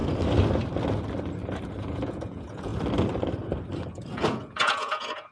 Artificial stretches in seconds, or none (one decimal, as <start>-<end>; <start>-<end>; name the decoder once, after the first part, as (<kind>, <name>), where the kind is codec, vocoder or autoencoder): 1.8-2.7 (vocoder, Vocos); 3.9-5.3